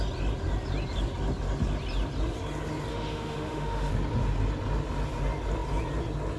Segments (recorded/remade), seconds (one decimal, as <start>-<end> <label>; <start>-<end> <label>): 0.0-2.9 recorded; 2.9-3.9 remade; 3.9-6.4 recorded